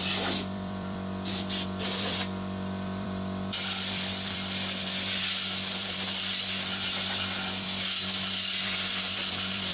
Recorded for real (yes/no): no